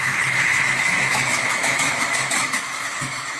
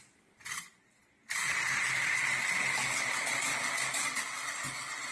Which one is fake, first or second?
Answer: first